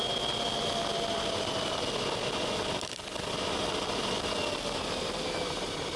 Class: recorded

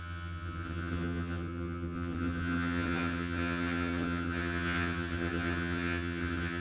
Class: remade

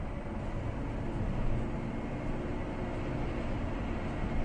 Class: recorded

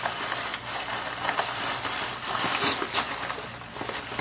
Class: recorded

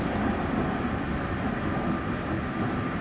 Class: recorded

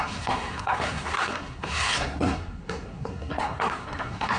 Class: remade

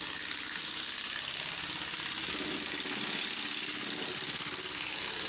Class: recorded